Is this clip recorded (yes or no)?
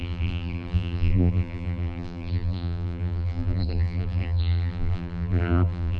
no